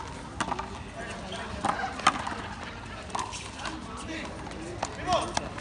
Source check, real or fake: real